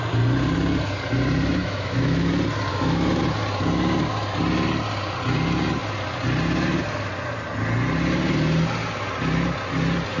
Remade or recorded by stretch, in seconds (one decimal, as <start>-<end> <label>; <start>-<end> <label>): 0.0-1.6 recorded; 1.6-2.3 remade; 2.3-2.7 recorded; 2.7-3.2 remade; 3.2-10.2 recorded